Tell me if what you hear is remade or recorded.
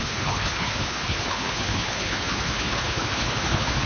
remade